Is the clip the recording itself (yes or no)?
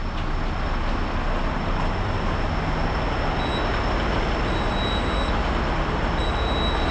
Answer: yes